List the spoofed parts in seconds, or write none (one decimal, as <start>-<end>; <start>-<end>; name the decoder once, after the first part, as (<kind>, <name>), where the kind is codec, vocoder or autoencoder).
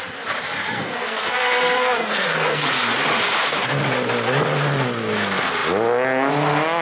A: 0.6-2.7 (codec, SNAC)